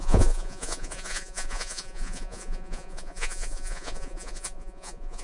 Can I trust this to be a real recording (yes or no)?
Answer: no